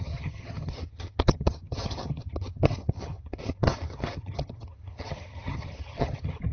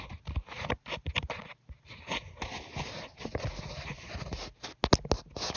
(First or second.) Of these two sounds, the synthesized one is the first